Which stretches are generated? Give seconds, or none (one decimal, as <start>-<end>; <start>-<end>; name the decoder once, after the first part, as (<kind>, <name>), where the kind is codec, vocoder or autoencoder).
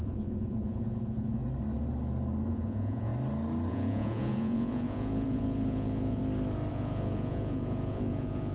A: 0.0-1.4 (vocoder, Vocos); 2.5-3.1; 3.7-6.2; 6.7-8.5